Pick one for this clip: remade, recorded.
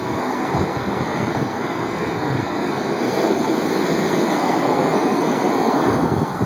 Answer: remade